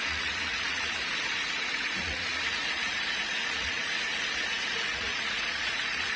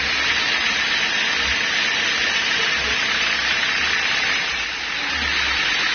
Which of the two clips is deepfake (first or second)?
first